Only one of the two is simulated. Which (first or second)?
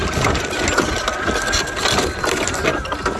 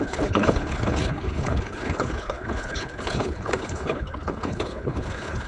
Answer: second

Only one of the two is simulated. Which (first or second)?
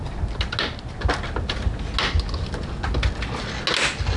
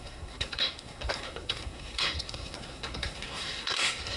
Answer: second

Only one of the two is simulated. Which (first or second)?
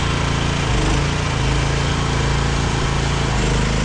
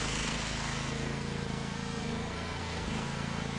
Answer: second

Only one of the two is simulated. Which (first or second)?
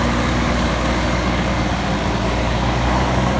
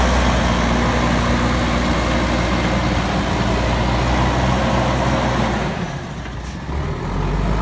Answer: first